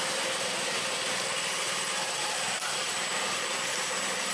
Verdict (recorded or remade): recorded